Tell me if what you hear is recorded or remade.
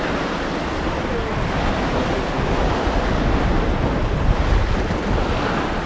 recorded